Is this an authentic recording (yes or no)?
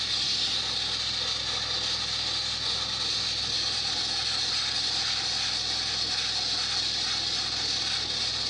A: yes